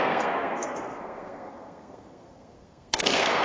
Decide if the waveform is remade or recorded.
remade